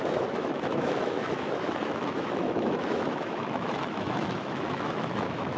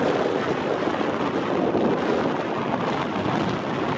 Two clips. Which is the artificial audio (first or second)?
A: first